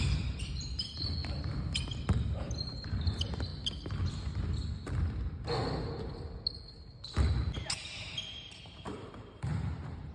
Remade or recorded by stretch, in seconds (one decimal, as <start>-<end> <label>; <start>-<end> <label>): 0.0-1.2 remade; 1.2-2.7 recorded; 2.7-3.5 remade; 3.5-8.0 recorded; 8.0-10.1 remade